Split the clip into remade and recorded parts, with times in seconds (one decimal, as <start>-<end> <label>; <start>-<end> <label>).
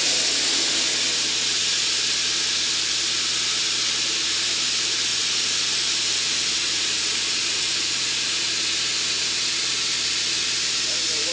0.0-5.1 recorded; 5.1-5.9 remade; 5.9-6.6 recorded; 6.6-8.4 remade; 8.4-11.3 recorded